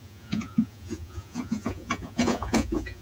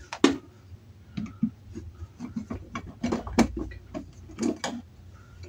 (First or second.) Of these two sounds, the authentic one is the second